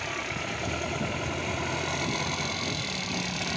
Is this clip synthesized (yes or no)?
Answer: no